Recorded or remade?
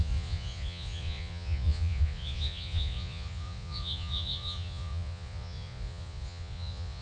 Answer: remade